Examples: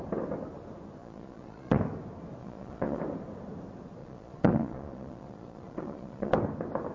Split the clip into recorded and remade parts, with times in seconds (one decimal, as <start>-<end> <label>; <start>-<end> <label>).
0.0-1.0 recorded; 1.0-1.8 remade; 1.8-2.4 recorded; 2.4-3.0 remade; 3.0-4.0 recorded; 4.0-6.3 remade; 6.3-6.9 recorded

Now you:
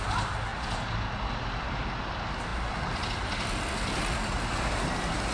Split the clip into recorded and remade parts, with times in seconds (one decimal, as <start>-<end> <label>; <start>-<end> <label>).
0.0-5.3 recorded

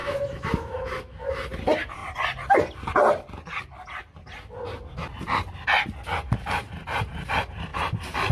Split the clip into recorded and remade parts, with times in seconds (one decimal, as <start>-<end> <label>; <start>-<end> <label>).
0.0-1.3 remade; 1.3-8.3 recorded

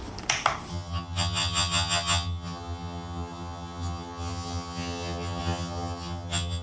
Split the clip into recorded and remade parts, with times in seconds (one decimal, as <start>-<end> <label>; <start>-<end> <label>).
0.0-0.7 recorded; 0.7-6.6 remade

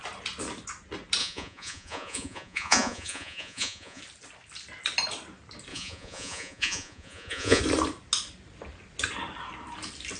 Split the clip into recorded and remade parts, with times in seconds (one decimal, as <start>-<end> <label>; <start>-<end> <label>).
0.0-1.2 recorded; 1.2-4.0 remade; 4.0-5.7 recorded; 5.7-7.6 remade; 7.6-10.2 recorded

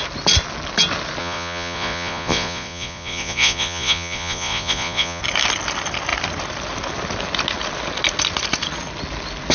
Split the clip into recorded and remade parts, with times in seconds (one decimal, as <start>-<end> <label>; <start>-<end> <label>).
0.0-1.2 recorded; 1.2-5.2 remade; 5.2-9.5 recorded